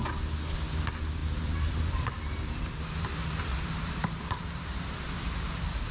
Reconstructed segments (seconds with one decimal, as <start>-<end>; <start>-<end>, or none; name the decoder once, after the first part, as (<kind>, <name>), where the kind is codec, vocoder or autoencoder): 1.2-4.2 (vocoder, BigVGAN v2); 4.7-5.5